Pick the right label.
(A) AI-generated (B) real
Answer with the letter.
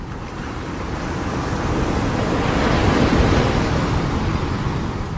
B